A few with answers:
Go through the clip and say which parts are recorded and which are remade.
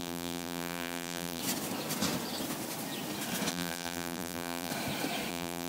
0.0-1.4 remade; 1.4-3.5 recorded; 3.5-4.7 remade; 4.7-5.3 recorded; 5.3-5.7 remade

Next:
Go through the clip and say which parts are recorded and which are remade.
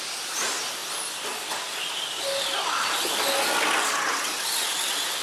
0.0-5.2 recorded